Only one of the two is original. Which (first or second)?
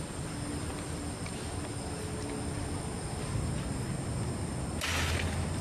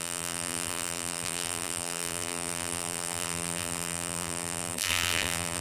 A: first